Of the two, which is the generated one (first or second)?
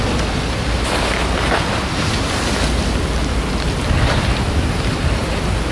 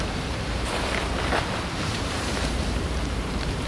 second